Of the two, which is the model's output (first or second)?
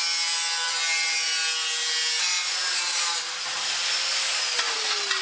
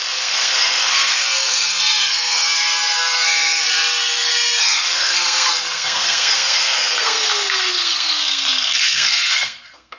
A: second